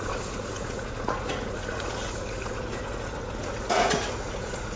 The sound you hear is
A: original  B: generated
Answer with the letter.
B